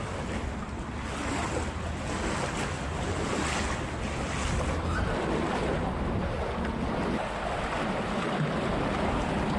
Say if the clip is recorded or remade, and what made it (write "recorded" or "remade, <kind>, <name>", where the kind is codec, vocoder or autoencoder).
recorded